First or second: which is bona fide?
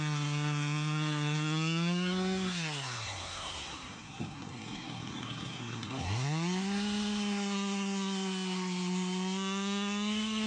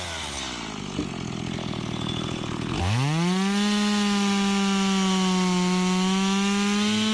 second